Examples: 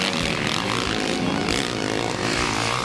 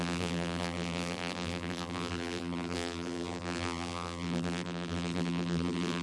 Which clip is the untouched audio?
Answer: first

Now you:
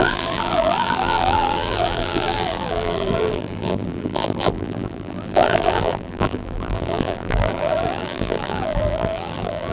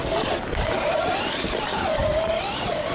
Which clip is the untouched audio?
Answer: second